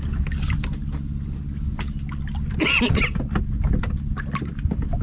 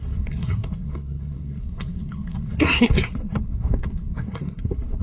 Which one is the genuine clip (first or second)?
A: first